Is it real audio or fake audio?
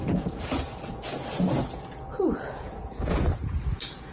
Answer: fake